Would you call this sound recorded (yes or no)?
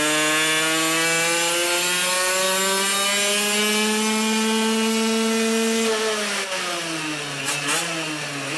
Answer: yes